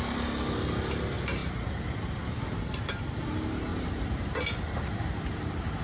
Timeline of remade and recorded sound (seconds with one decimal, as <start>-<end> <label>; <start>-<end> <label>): 0.0-5.8 recorded